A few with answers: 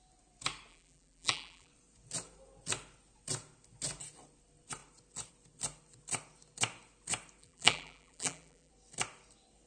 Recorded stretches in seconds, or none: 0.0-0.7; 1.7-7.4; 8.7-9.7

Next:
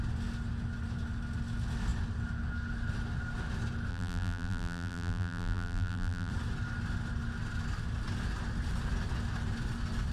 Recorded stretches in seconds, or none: 0.0-3.9; 6.3-10.1

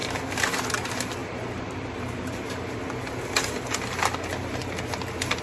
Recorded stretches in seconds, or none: 0.0-1.2; 3.1-5.4